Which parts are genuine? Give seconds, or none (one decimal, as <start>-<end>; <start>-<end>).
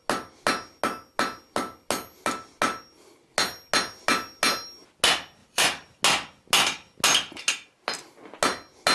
0.0-5.4; 6.0-8.9